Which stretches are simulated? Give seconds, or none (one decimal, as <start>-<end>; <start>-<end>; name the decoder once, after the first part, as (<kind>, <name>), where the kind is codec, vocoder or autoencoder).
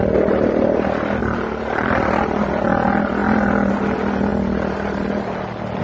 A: none